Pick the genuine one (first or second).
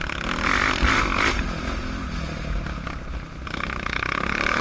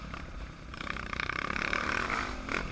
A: first